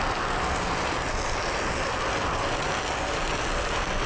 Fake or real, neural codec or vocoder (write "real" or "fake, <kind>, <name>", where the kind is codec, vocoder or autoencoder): real